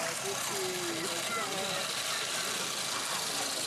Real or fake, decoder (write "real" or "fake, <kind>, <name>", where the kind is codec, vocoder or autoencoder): real